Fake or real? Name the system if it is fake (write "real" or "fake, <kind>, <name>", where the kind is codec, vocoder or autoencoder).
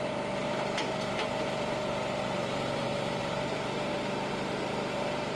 fake, vocoder, BigVGAN v2